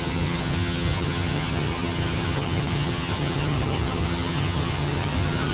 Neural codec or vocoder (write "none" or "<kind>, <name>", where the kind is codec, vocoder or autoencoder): vocoder, HiFi-GAN